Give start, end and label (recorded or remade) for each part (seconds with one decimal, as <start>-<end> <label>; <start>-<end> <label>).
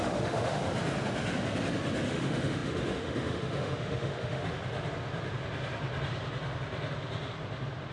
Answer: 0.0-0.6 remade; 0.6-2.1 recorded; 2.1-4.4 remade; 4.4-7.9 recorded